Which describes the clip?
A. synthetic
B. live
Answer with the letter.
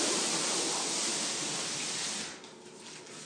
B